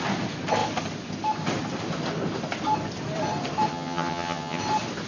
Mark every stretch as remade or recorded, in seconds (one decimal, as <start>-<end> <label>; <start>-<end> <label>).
0.0-3.7 recorded; 3.7-4.6 remade; 4.6-5.1 recorded